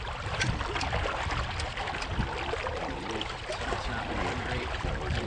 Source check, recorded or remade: remade